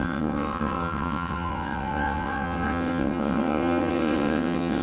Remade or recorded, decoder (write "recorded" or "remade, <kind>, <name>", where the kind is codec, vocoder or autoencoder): remade, vocoder, WaveNeXt